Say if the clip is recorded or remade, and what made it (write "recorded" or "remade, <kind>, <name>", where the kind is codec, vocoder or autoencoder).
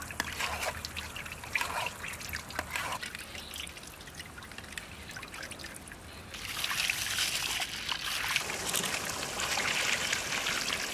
recorded